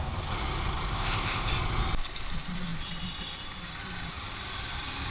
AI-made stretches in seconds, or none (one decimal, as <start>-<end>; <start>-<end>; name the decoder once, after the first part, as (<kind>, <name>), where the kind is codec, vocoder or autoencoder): 0.9-1.5 (codec, ZipCodec)